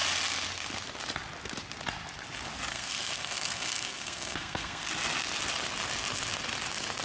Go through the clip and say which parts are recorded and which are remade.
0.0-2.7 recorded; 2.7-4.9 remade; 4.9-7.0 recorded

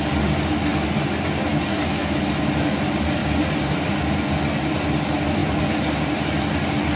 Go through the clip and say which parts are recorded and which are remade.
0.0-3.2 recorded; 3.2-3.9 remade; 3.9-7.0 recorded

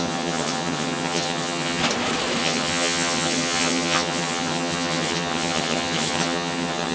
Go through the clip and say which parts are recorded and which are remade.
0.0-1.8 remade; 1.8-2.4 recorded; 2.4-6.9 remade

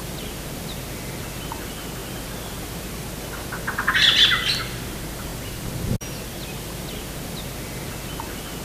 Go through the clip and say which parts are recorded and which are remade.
0.0-8.6 recorded

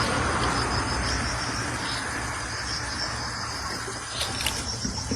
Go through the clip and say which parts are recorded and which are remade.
0.0-4.2 recorded; 4.2-4.7 remade; 4.7-5.2 recorded

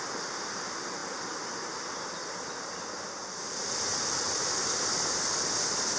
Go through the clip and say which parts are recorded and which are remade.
0.0-6.0 recorded

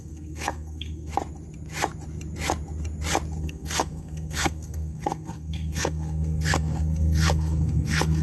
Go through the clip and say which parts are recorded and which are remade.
0.0-1.1 remade; 1.1-3.4 recorded; 3.4-8.2 remade

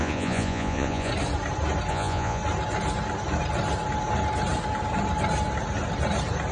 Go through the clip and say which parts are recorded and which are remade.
0.0-1.1 remade; 1.1-1.9 recorded; 1.9-2.4 remade; 2.4-6.5 recorded